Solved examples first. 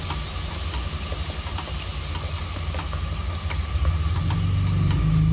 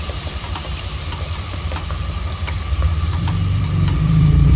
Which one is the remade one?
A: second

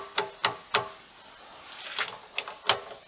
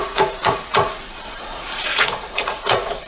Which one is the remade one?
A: second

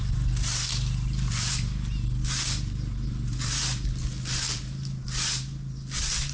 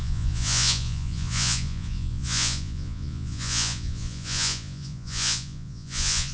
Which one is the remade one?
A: second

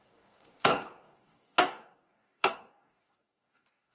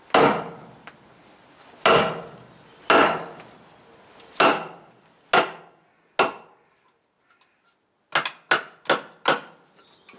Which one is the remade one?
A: first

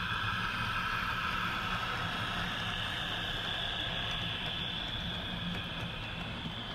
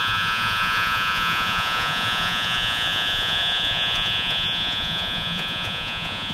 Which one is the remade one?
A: second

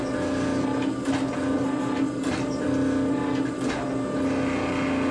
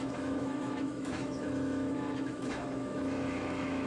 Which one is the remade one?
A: second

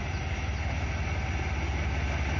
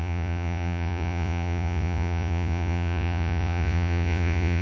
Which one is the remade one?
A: second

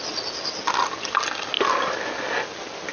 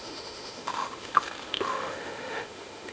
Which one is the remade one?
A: second